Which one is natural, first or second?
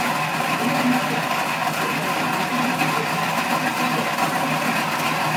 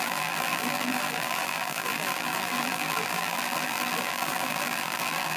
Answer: first